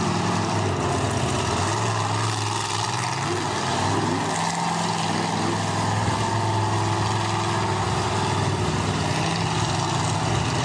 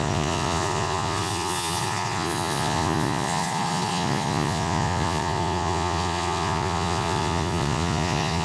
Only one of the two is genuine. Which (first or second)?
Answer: first